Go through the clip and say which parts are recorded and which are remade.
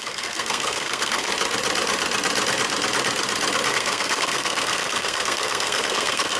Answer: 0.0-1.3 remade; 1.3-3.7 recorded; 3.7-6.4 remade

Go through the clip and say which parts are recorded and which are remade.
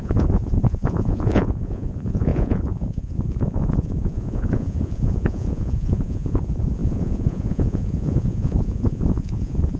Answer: 0.0-9.8 remade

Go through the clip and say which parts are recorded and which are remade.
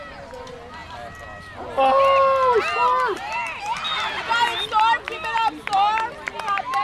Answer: 0.0-6.8 recorded